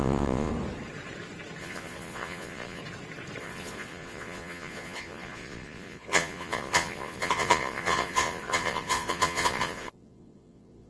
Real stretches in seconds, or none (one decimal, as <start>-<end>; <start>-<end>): 0.5-1.6; 2.8-3.4